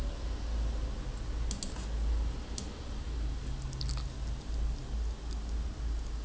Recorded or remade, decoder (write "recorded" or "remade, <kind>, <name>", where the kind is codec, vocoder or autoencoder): recorded